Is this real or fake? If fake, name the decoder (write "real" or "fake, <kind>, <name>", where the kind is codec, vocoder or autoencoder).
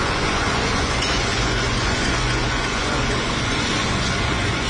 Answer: fake, vocoder, Vocos